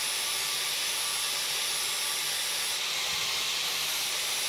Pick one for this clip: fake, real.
real